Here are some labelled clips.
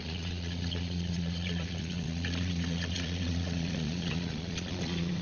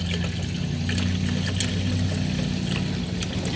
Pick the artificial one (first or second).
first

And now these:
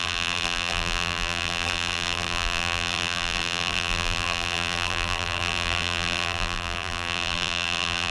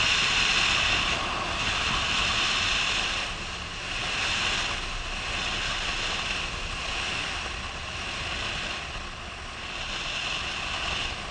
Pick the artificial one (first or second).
first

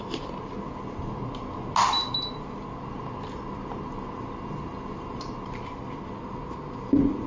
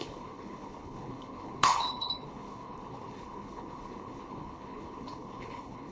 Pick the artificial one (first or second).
second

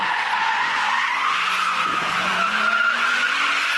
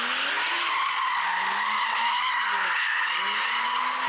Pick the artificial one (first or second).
first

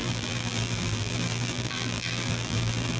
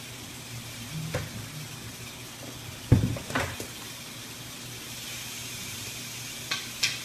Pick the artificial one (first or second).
first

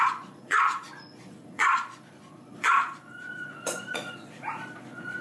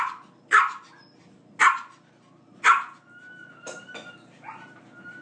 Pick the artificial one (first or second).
first